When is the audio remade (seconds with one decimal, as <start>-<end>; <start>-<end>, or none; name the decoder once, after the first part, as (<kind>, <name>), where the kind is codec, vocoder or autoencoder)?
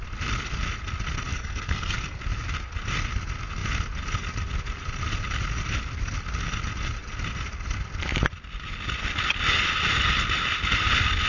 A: 1.3-2.2 (codec, SNAC)